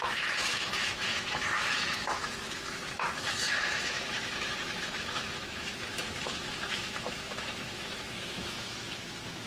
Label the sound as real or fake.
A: fake